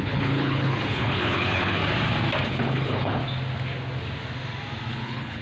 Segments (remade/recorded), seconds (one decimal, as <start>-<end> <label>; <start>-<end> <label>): 0.0-1.8 remade; 1.8-2.4 recorded; 2.4-3.2 remade; 3.2-4.9 recorded; 4.9-5.4 remade